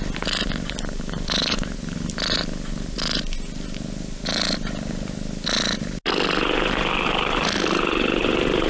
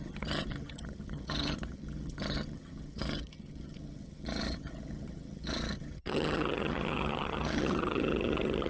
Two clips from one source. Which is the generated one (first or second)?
second